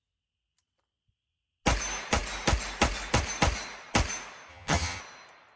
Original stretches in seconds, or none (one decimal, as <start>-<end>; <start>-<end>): 0.0-4.5; 5.0-5.6